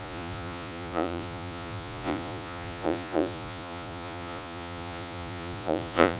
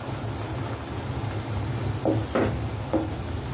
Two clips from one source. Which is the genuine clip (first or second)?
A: second